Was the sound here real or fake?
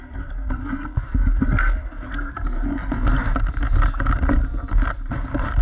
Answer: real